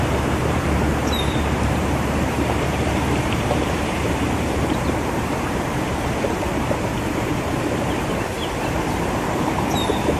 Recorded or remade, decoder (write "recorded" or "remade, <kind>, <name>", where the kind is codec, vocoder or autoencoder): remade, vocoder, BigVGAN v2